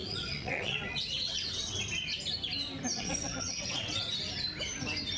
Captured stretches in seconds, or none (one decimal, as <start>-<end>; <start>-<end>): 1.8-2.9; 4.0-5.2